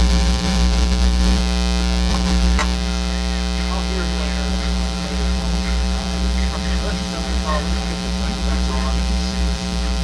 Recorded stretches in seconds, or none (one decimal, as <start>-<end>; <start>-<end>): 1.4-2.1; 2.6-4.5